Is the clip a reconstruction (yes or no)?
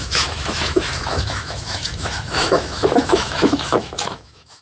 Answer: yes